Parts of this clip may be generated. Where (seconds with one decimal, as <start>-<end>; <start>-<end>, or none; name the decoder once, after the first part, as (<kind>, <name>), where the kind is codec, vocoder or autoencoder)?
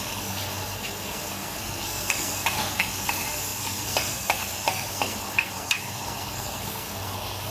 0.0-7.5 (codec, SNAC)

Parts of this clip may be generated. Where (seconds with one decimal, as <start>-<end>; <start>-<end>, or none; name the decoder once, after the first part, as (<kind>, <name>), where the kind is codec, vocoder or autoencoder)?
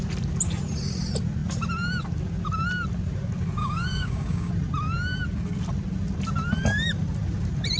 3.6-4.5 (codec, DAC)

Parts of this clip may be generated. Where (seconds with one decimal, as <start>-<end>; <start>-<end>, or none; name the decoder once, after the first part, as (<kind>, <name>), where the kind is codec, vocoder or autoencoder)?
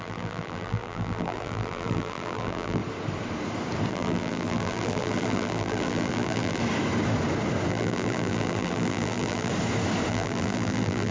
0.0-2.8 (vocoder, BigVGAN v2); 3.9-6.6; 7.7-9.5; 10.1-11.1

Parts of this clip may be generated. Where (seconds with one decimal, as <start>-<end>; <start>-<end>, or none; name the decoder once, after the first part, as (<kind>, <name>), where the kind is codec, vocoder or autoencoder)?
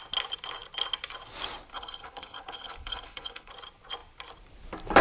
1.7-3.5 (codec, HILCodec)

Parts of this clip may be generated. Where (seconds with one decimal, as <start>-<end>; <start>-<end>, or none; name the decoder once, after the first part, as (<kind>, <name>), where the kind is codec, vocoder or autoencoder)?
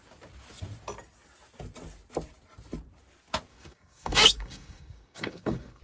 3.5-5.8 (codec, DAC)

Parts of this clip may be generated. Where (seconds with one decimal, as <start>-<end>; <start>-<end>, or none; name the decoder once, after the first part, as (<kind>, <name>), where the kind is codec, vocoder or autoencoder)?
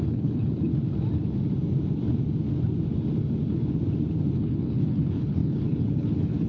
0.0-0.7 (codec, HILCodec); 4.3-6.5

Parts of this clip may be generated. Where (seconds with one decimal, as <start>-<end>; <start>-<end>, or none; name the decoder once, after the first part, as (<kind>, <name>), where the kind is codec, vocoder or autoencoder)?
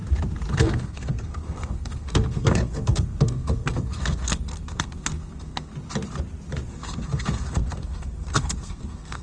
0.5-5.7 (codec, SNAC); 6.7-9.2